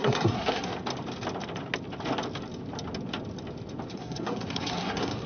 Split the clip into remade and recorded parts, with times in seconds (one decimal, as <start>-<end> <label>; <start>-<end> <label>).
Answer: 0.0-0.7 remade; 0.7-3.9 recorded; 3.9-5.3 remade